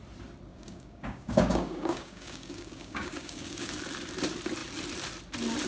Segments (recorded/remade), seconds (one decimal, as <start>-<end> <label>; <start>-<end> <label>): 0.0-0.5 recorded; 0.5-3.7 remade; 3.7-5.7 recorded